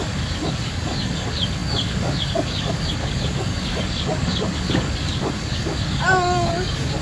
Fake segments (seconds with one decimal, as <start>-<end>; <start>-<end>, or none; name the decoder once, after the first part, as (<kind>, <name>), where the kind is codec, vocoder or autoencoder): 0.0-7.0 (codec, DAC)